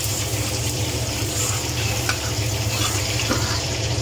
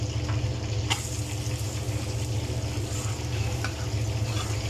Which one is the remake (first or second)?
first